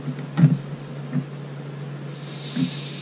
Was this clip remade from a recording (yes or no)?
no